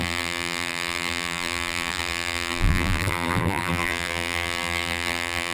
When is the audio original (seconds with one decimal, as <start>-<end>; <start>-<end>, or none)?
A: none